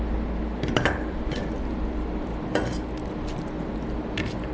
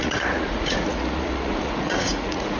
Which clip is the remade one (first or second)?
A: second